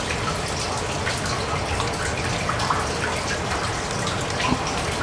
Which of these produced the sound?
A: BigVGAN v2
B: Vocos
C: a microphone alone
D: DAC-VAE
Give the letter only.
C